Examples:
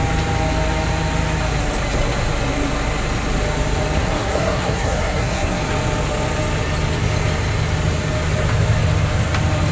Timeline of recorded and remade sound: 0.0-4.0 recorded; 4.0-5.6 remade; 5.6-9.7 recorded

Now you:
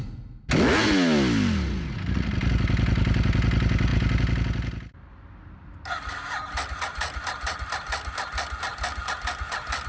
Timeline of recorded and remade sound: 0.0-9.9 recorded

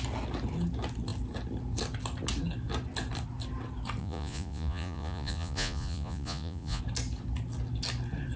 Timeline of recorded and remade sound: 0.0-4.0 recorded; 4.0-6.8 remade; 6.8-8.4 recorded

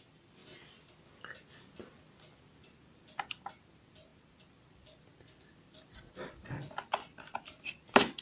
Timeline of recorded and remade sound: 0.0-8.2 recorded

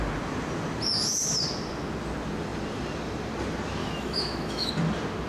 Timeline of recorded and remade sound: 0.0-3.8 recorded; 3.8-4.7 remade; 4.7-5.3 recorded

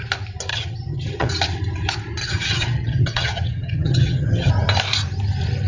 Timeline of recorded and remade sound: 0.0-0.5 recorded; 0.5-1.3 remade; 1.3-2.2 recorded; 2.2-4.5 remade; 4.5-5.7 recorded

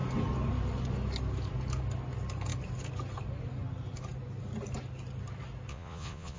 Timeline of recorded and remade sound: 0.0-5.7 recorded; 5.7-6.4 remade